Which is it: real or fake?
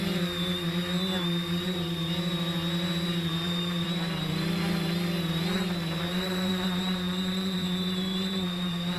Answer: fake